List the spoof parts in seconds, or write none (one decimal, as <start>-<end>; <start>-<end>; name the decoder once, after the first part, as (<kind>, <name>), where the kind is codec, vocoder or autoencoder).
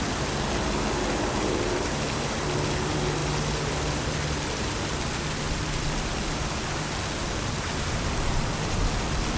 none